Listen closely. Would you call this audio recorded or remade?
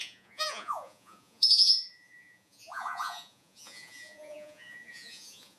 remade